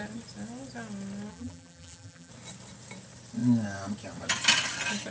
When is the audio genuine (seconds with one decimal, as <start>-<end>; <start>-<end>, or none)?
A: 0.0-1.3; 2.3-5.1